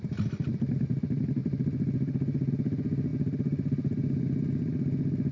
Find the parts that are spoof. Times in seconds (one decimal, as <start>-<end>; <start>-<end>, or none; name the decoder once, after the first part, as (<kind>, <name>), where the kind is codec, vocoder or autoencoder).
none